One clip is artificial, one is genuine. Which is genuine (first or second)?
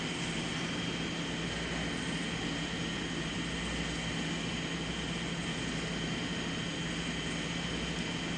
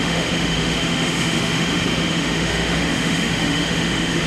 first